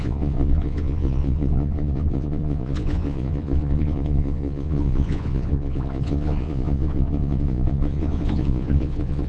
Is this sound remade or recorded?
remade